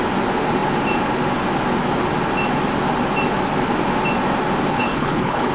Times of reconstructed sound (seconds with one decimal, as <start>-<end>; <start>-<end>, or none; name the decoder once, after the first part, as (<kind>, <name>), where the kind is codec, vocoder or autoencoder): 4.7-5.5 (codec, HILCodec)